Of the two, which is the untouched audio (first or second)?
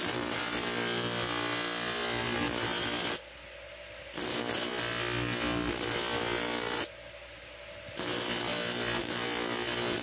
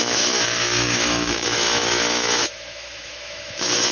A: first